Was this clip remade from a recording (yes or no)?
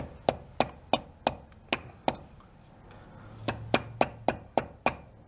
no